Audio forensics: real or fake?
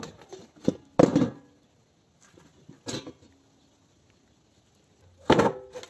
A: real